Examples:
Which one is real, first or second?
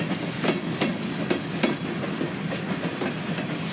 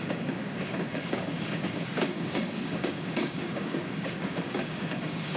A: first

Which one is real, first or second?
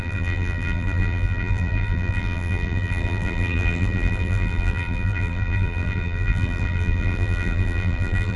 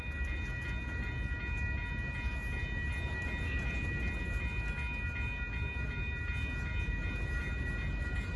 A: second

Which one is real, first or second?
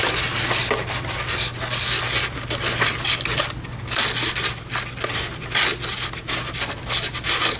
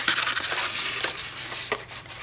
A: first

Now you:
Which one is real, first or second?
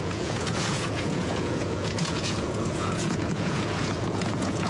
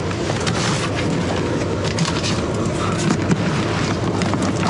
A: second